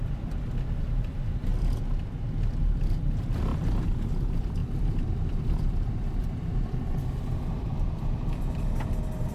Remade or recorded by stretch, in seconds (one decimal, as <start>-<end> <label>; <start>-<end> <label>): 0.0-1.5 remade; 1.5-2.6 recorded; 2.6-9.3 remade